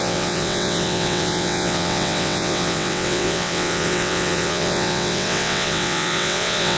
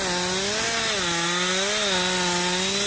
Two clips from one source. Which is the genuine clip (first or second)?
second